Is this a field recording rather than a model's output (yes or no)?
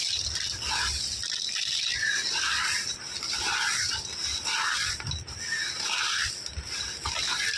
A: yes